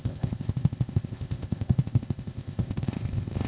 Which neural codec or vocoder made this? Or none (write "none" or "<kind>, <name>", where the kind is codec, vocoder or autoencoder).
codec, ZipCodec